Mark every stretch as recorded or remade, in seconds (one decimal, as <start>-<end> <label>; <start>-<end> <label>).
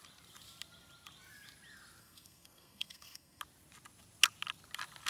0.0-2.0 recorded; 2.0-3.4 remade; 3.4-5.1 recorded